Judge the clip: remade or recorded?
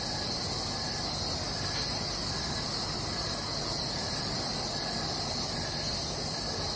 recorded